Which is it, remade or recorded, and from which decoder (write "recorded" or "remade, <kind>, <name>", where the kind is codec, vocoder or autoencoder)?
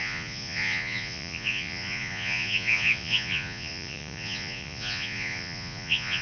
remade, vocoder, Vocos